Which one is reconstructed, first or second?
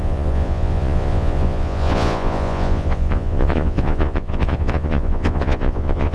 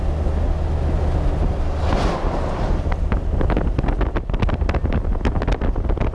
first